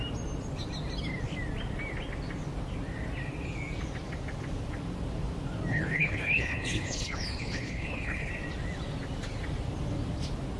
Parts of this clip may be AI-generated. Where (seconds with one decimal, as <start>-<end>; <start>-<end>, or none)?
5.7-8.3